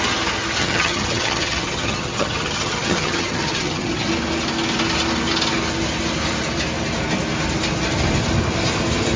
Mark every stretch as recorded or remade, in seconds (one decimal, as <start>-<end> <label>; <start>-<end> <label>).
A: 0.0-0.6 recorded; 0.6-4.1 remade; 4.1-9.2 recorded